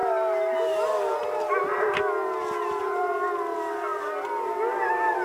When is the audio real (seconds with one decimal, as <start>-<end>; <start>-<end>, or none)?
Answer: 0.0-5.2